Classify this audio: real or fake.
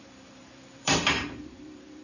fake